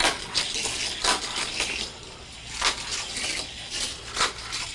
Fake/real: real